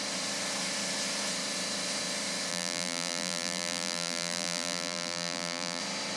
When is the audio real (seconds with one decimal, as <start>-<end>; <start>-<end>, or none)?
0.0-2.5; 5.8-6.2